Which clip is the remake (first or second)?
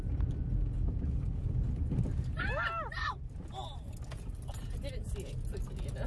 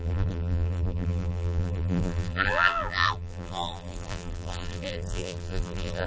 second